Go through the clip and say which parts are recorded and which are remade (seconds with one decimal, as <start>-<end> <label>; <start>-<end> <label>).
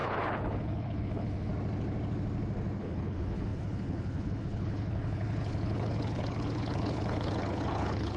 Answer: 0.0-1.5 remade; 1.5-2.8 recorded; 2.8-8.2 remade